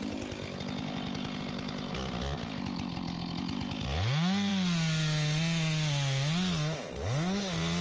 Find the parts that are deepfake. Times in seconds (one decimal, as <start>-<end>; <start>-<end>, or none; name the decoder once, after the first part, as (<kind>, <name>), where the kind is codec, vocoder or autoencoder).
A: none

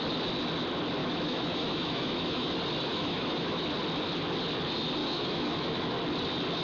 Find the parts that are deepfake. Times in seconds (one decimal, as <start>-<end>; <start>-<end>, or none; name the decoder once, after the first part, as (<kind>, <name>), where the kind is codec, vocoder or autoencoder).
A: 1.0-2.5 (autoencoder, DAC-VAE); 2.9-3.6; 5.0-5.9